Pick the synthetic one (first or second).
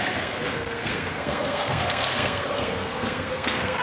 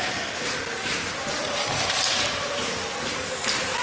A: first